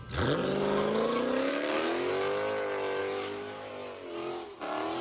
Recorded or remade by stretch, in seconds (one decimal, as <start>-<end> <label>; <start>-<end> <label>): 0.0-1.5 recorded; 1.5-2.1 remade; 2.1-3.0 recorded; 3.0-3.7 remade; 3.7-5.0 recorded